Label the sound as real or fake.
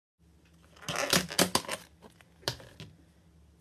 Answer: real